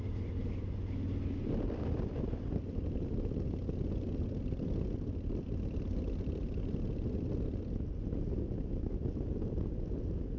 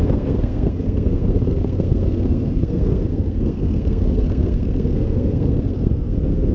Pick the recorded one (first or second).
first